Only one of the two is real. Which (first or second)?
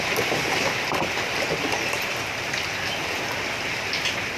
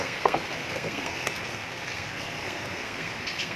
first